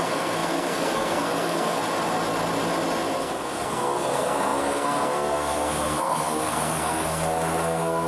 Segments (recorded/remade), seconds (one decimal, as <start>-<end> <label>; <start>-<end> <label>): 0.0-1.8 remade; 1.8-3.2 recorded; 3.2-8.1 remade